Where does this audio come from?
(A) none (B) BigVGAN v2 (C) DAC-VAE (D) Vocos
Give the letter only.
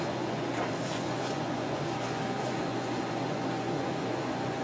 D